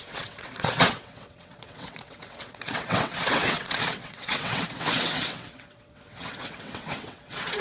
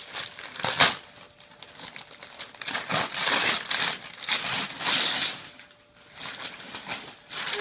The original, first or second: second